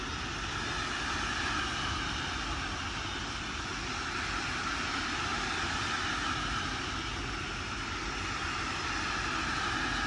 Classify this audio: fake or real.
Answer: real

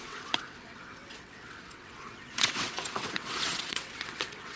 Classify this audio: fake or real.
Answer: fake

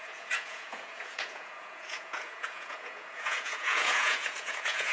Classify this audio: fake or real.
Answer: fake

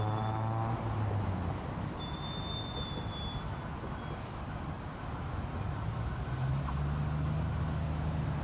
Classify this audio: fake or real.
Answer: real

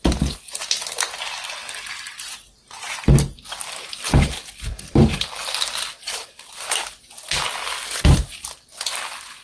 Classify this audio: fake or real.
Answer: real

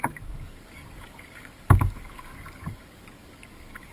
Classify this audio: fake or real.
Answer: fake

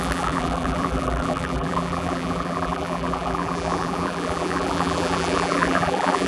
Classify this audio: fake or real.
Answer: fake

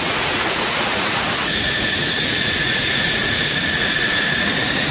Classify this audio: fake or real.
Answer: fake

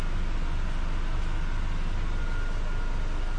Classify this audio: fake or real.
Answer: real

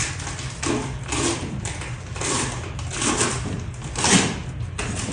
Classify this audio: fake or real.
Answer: real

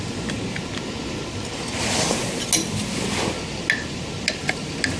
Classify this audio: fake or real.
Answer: real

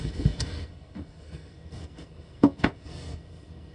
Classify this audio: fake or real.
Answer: fake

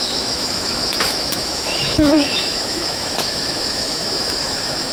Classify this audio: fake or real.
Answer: fake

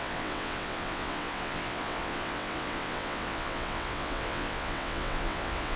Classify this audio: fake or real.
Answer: fake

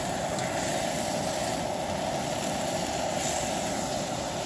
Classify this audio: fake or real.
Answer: real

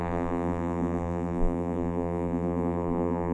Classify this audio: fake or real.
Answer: fake